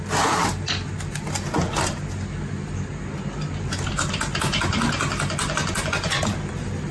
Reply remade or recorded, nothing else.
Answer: recorded